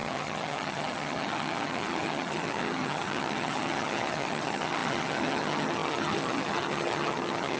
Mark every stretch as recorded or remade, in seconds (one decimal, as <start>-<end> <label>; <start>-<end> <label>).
0.0-7.6 remade